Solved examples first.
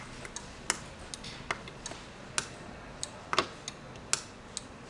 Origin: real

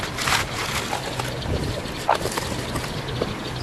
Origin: real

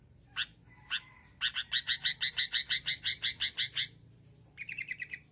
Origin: real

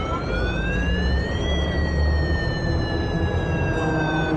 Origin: real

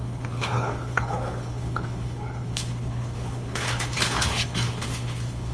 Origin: fake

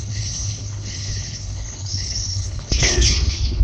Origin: fake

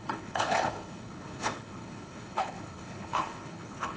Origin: fake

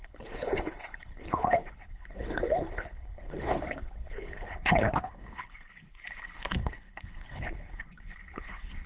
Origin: fake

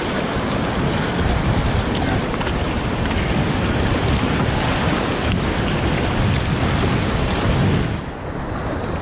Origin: real